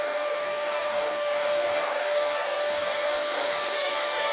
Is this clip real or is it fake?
fake